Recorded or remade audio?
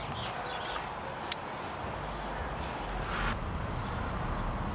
recorded